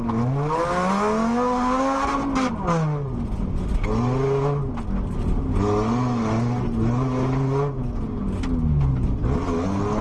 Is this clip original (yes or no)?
yes